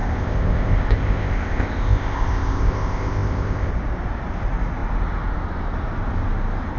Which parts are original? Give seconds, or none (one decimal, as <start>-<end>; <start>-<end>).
3.7-6.8